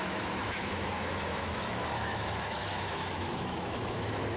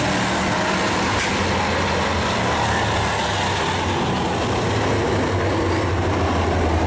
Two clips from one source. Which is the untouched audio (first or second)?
second